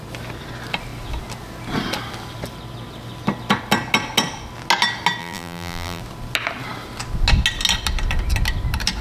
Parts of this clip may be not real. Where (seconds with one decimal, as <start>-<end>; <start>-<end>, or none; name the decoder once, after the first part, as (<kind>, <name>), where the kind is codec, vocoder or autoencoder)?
5.2-6.0 (vocoder, BigVGAN v2)